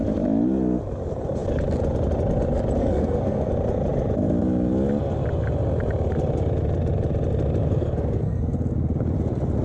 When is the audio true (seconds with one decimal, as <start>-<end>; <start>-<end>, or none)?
0.0-2.8; 3.5-7.6; 8.4-9.6